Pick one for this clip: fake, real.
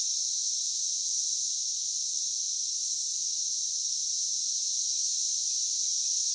real